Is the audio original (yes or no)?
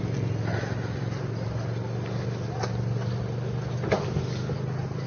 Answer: yes